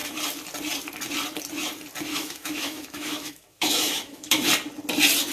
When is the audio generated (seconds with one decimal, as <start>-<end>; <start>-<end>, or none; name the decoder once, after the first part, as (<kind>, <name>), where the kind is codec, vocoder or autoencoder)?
2.1-4.5 (autoencoder, DAC-VAE)